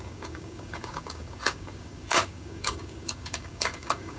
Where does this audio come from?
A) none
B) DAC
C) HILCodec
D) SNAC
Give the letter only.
B